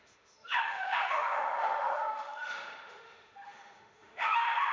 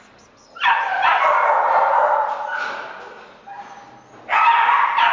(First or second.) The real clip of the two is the second